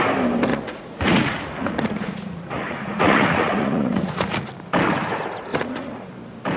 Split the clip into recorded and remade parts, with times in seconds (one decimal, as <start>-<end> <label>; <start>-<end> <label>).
0.0-0.5 recorded; 0.5-4.5 remade; 4.5-5.5 recorded; 5.5-6.1 remade; 6.1-6.6 recorded